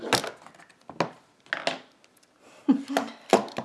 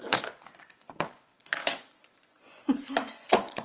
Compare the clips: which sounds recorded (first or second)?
first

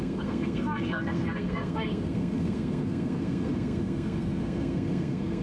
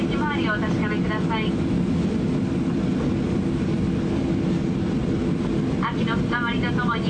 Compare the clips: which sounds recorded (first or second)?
second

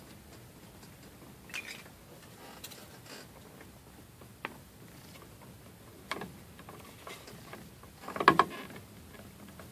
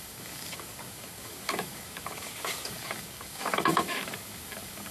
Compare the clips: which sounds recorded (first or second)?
first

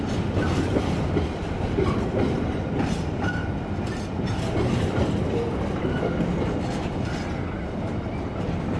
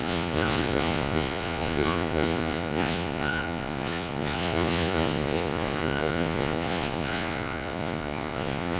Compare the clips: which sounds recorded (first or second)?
first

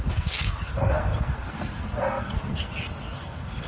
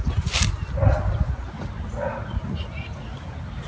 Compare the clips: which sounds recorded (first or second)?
second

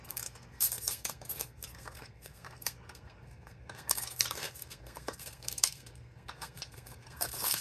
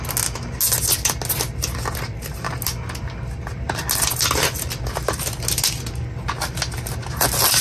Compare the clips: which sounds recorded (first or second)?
second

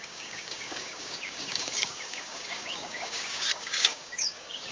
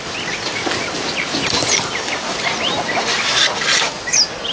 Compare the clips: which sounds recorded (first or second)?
second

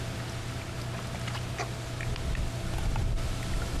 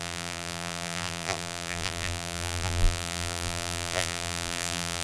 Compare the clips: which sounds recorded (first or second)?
first